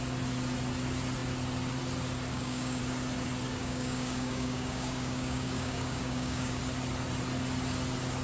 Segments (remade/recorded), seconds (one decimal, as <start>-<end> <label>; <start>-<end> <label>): 0.0-2.3 recorded; 2.3-2.8 remade; 2.8-3.6 recorded; 3.6-6.6 remade; 6.6-8.2 recorded